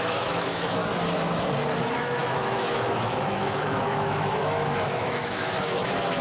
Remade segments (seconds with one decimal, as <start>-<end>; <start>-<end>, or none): 0.0-0.8; 1.8-6.2